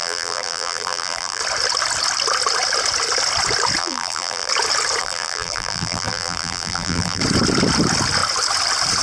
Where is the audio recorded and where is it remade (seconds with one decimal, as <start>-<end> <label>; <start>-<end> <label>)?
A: 0.0-1.4 remade; 1.4-3.8 recorded; 3.8-4.5 remade; 4.5-5.0 recorded; 5.0-7.2 remade; 7.2-9.0 recorded